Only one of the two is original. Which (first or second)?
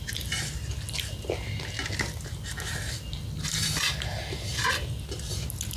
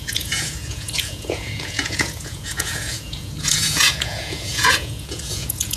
first